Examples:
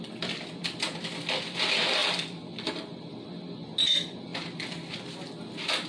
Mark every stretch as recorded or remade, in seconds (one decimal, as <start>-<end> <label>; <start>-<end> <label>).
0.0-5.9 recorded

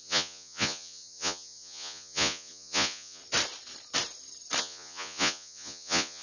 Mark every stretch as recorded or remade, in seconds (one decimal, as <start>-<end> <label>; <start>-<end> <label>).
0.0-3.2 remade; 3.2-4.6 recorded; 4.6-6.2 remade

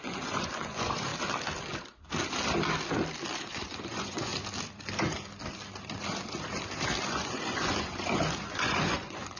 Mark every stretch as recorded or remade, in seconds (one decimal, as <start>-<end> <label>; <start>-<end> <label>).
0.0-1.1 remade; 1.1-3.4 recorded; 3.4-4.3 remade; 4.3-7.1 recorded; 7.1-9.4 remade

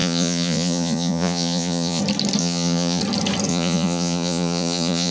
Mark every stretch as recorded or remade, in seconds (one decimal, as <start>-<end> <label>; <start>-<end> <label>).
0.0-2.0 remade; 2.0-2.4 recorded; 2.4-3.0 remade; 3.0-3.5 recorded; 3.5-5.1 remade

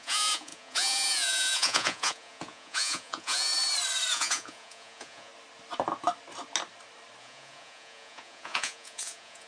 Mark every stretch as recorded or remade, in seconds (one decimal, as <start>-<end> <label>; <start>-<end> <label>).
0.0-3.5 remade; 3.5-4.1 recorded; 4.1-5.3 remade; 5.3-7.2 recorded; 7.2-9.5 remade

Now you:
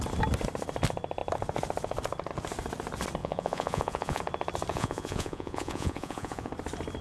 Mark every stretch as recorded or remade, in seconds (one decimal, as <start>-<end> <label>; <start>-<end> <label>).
0.0-3.2 recorded; 3.2-4.2 remade; 4.2-4.7 recorded; 4.7-6.5 remade; 6.5-7.0 recorded

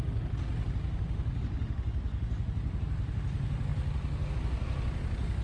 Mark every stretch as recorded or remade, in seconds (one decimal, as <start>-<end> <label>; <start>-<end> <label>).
0.0-5.4 recorded